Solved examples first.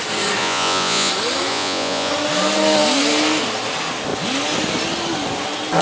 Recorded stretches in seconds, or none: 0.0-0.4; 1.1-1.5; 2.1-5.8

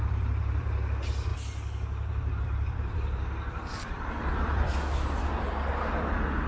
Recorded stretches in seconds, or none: none